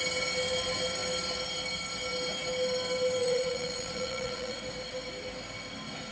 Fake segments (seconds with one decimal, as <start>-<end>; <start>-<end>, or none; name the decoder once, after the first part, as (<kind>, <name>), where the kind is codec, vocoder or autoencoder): 3.2-4.6 (vocoder, Vocos)

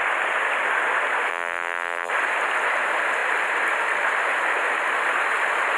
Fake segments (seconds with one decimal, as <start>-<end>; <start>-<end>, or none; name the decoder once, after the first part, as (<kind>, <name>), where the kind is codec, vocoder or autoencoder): 1.3-2.1 (vocoder, BigVGAN v2)

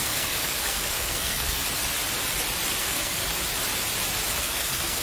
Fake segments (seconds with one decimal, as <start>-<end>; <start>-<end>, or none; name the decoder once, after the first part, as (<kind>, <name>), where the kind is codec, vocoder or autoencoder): 0.0-1.6 (codec, SNAC); 2.8-3.2; 4.4-5.0

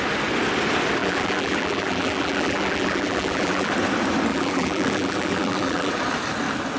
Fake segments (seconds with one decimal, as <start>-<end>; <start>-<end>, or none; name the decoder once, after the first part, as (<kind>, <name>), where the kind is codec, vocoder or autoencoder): 1.0-3.7 (vocoder, BigVGAN v2); 4.3-5.9

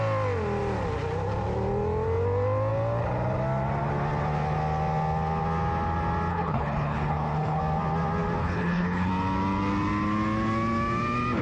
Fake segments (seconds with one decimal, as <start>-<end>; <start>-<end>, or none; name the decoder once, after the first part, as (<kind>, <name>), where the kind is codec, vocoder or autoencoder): 6.3-7.6 (codec, HILCodec); 8.4-9.1

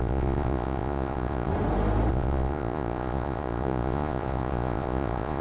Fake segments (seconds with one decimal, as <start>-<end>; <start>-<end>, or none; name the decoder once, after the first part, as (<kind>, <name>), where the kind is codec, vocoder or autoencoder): 0.0-1.5 (vocoder, Vocos); 2.1-5.4